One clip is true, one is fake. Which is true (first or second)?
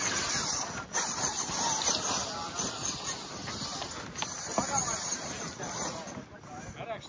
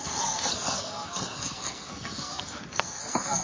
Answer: first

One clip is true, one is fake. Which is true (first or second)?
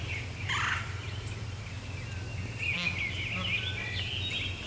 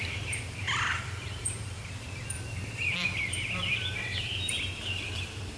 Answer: first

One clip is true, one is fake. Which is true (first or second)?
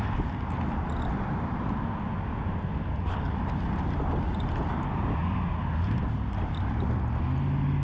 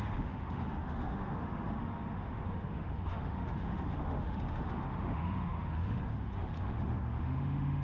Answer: first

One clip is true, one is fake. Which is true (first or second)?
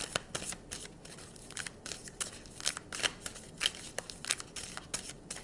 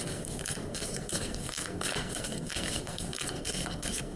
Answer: first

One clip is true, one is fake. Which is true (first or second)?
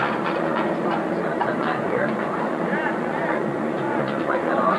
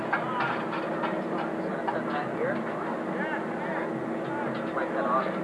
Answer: second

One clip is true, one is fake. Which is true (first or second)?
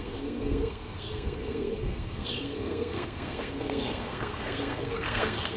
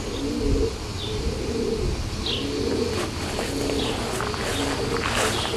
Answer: second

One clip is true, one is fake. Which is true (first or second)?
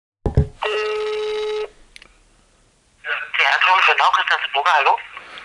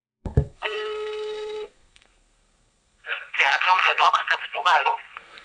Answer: first